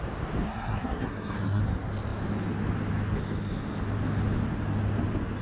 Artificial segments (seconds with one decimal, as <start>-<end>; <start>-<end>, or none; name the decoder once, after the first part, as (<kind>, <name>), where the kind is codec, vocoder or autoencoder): 0.4-1.6 (codec, SNAC)